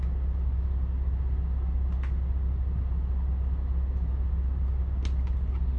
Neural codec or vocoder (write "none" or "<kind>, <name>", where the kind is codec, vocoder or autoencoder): none